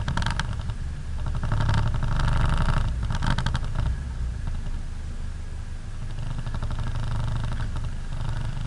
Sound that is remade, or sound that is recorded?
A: recorded